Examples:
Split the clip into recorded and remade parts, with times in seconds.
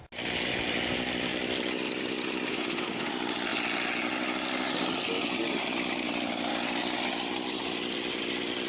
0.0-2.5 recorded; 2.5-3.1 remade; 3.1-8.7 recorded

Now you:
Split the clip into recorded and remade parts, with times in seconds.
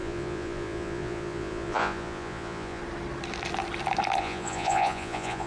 0.0-2.8 remade; 2.8-4.2 recorded; 4.2-5.5 remade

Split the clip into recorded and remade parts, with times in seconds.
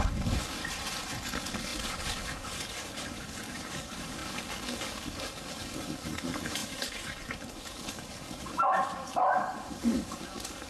0.0-0.6 remade; 0.6-1.2 recorded; 1.2-10.7 remade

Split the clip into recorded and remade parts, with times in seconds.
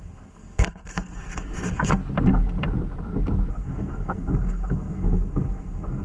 0.0-2.0 remade; 2.0-3.5 recorded; 3.5-6.0 remade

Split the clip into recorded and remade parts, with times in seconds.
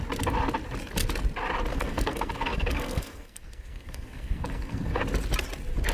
0.0-1.7 recorded; 1.7-5.0 remade; 5.0-5.9 recorded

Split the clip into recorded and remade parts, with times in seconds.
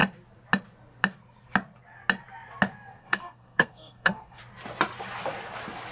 0.0-3.0 recorded; 3.0-4.4 remade; 4.4-5.9 recorded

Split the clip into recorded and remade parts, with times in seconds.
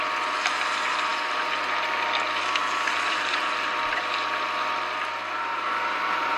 0.0-6.4 recorded